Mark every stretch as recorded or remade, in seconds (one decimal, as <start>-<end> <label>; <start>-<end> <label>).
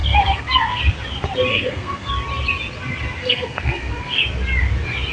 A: 0.0-0.8 remade; 0.8-1.5 recorded; 1.5-2.1 remade; 2.1-3.2 recorded; 3.2-4.2 remade; 4.2-5.1 recorded